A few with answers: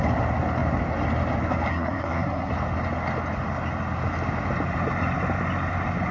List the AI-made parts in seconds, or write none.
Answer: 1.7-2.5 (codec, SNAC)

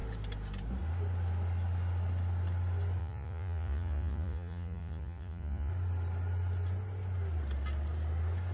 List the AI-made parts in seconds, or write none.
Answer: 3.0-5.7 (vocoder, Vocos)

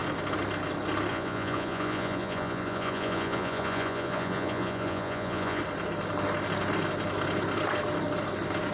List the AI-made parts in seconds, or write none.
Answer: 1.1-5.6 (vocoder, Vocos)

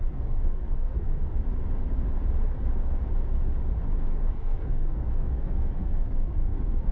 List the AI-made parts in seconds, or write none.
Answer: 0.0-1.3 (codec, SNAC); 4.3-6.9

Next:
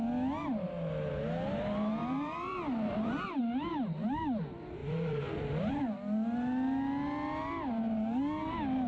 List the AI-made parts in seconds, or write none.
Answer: 2.0-3.4 (vocoder, BigVGAN v2); 4.8-5.7

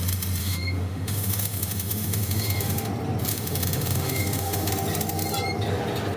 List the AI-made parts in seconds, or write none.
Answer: 0.4-2.9 (autoencoder, DAC-VAE); 3.3-4.7

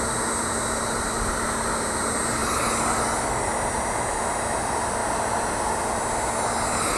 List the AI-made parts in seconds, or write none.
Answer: none